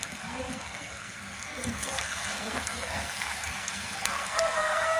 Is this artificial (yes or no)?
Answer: yes